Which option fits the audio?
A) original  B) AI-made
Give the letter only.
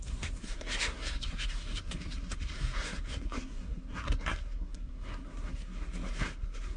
B